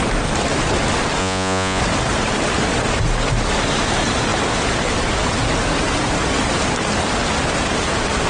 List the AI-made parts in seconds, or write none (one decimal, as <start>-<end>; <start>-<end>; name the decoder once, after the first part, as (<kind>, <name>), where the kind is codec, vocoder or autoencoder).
1.2-1.8 (vocoder, Vocos)